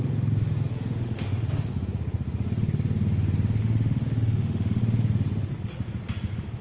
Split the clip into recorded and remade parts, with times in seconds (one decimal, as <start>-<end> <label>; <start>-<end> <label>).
0.0-0.7 recorded; 0.7-1.5 remade; 1.5-3.6 recorded; 3.6-4.8 remade; 4.8-6.6 recorded